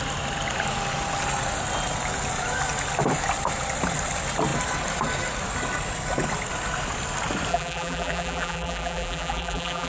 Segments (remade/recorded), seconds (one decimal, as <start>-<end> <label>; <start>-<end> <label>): 0.0-7.5 recorded; 7.5-9.9 remade